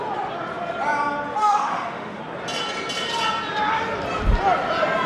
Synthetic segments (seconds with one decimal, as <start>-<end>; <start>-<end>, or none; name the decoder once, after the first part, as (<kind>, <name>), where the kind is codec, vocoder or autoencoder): 1.4-2.2 (autoencoder, DAC-VAE)